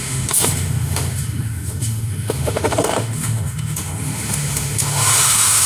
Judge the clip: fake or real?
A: fake